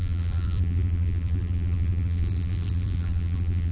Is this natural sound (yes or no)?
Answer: no